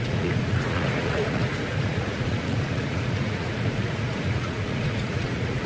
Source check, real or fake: fake